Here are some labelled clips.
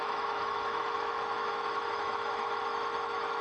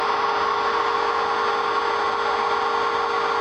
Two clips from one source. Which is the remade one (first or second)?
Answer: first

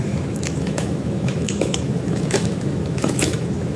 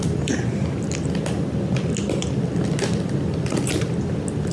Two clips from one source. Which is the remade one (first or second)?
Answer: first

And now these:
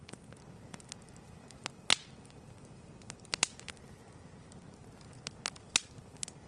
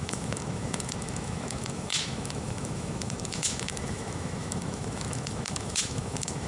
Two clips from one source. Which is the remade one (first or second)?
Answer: second